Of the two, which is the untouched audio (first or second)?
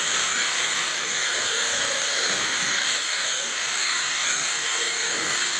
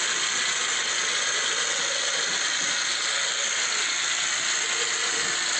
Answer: second